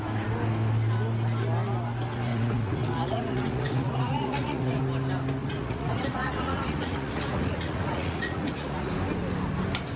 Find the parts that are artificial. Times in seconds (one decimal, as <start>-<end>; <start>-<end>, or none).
2.3-4.8; 5.4-8.9